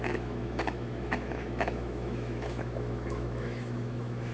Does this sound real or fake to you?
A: fake